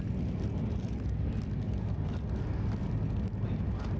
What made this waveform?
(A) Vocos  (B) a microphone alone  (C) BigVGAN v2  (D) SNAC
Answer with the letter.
B